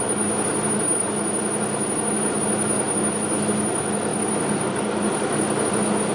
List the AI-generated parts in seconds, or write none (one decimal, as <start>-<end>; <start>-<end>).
none